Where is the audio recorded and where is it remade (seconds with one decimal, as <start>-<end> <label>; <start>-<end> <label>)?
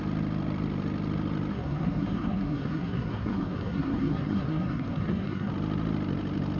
0.0-1.5 recorded; 1.5-5.5 remade; 5.5-6.6 recorded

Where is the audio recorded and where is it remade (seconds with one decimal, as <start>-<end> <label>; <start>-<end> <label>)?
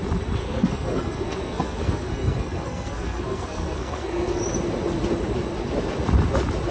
0.0-0.4 recorded; 0.4-4.4 remade; 4.4-6.7 recorded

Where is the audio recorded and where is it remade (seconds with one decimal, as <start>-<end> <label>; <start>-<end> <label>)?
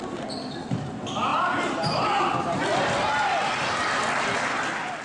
0.0-5.0 recorded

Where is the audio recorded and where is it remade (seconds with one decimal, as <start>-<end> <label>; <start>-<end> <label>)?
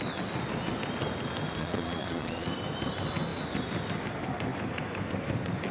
0.0-1.6 recorded; 1.6-2.5 remade; 2.5-5.7 recorded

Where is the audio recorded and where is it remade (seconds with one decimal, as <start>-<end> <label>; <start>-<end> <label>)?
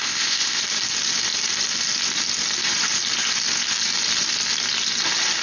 0.0-0.6 remade; 0.6-5.4 recorded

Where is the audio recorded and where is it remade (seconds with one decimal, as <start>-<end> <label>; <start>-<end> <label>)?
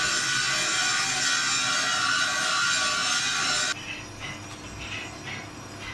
0.0-5.9 recorded